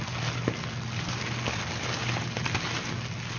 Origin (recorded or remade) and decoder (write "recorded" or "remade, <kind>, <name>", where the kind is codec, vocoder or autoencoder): recorded